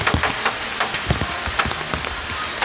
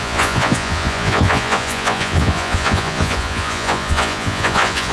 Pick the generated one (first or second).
second